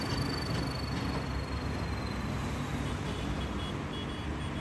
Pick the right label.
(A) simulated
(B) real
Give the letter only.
B